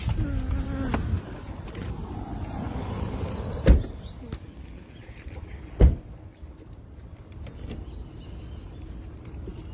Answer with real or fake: real